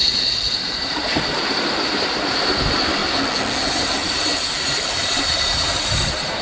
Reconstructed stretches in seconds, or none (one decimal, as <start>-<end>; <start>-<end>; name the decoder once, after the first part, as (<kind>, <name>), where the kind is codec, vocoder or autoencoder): 0.0-3.0 (vocoder, BigVGAN v2); 3.7-6.4